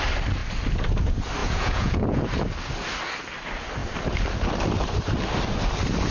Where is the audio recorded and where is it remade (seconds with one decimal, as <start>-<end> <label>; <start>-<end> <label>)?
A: 0.0-1.4 recorded; 1.4-2.2 remade; 2.2-6.1 recorded